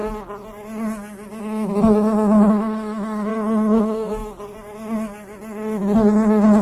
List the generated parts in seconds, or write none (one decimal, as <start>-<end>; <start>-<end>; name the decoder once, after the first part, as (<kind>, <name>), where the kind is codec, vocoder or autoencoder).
1.4-3.3 (autoencoder, DAC-VAE); 3.8-4.2